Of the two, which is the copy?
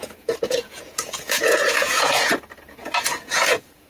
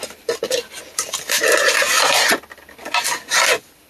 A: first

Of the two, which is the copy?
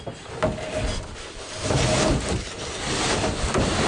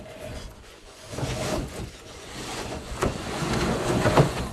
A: second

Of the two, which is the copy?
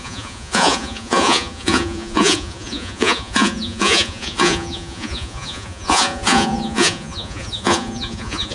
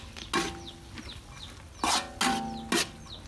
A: first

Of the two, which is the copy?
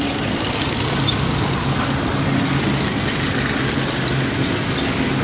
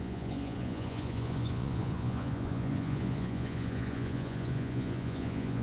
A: second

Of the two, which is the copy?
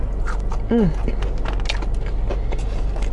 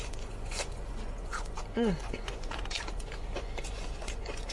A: second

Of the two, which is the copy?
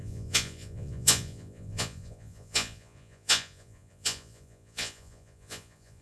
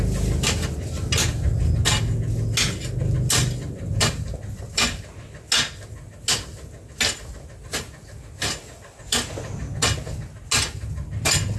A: first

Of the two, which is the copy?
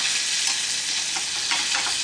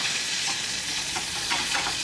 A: second